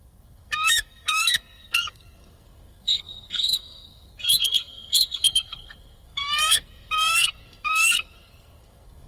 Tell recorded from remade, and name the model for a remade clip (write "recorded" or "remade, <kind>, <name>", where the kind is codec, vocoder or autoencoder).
remade, codec, SNAC